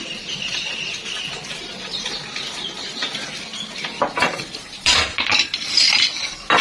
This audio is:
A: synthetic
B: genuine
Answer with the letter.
B